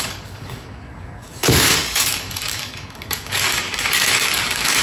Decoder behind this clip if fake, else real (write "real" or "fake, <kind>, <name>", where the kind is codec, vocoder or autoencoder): fake, codec, DAC